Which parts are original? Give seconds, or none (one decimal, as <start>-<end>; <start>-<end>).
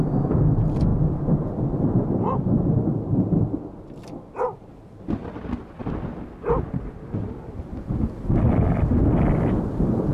0.0-10.1